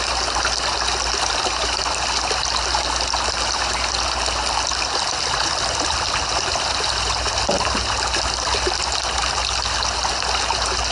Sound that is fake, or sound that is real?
real